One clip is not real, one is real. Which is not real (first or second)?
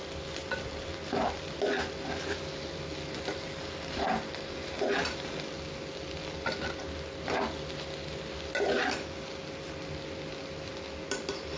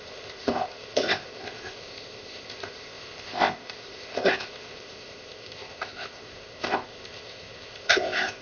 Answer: second